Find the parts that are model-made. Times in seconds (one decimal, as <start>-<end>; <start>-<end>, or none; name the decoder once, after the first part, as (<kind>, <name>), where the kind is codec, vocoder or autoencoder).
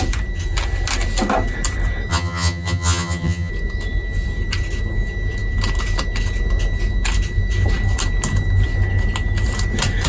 2.1-3.5 (vocoder, HiFi-GAN)